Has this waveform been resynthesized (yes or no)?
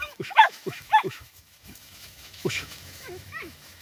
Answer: yes